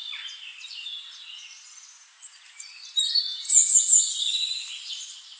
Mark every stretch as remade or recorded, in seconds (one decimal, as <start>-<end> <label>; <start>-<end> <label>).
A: 0.0-5.4 recorded